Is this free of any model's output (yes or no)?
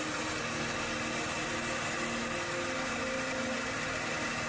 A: yes